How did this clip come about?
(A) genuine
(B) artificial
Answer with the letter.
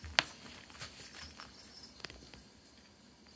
A